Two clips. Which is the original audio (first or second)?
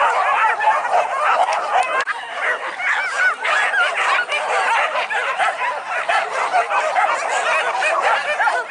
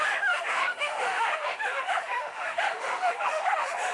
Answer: first